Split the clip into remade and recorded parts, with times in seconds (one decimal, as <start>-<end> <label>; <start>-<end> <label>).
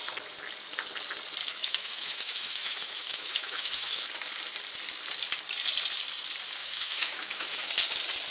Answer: 0.0-1.4 recorded; 1.4-4.0 remade; 4.0-6.6 recorded; 6.6-7.7 remade; 7.7-8.3 recorded